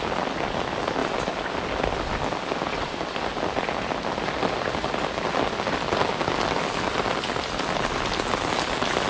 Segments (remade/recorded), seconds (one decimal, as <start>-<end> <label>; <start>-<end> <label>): 0.0-9.1 recorded